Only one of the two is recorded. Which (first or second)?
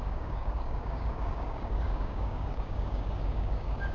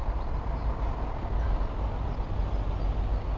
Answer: second